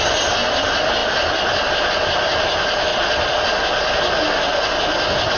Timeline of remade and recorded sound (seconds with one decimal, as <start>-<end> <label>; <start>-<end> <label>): 0.0-2.9 recorded; 2.9-3.4 remade; 3.4-5.4 recorded